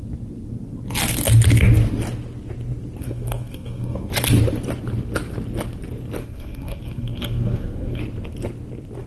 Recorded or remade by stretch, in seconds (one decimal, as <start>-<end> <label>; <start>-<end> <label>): 0.0-3.0 recorded; 3.0-4.1 remade; 4.1-6.2 recorded; 6.2-8.0 remade; 8.0-9.1 recorded